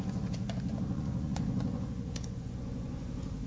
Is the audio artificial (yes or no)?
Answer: yes